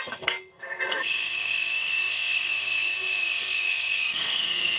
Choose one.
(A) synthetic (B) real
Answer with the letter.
A